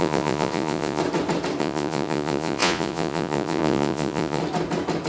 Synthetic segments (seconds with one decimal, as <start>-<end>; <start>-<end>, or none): 0.0-1.0; 1.6-4.4